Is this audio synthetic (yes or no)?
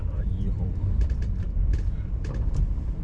no